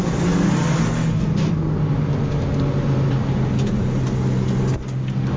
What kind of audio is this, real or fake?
real